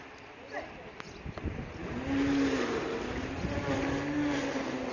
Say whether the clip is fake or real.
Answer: real